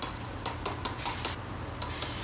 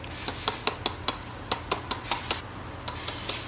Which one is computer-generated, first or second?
first